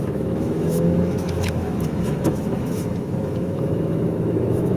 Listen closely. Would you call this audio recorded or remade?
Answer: remade